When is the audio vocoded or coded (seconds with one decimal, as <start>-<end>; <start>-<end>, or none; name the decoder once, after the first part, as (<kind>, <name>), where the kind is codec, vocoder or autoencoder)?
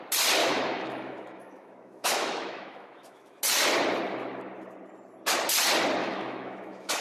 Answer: 0.4-3.4 (autoencoder, DAC-VAE); 6.0-7.0